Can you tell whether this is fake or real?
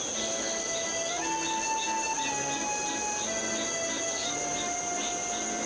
real